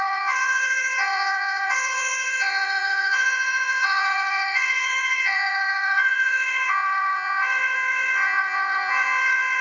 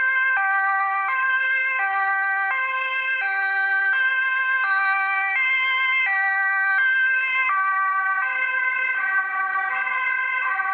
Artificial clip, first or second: first